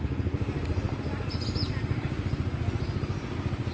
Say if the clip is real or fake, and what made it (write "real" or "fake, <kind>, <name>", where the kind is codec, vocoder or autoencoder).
real